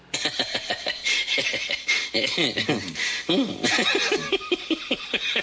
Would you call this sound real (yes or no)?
yes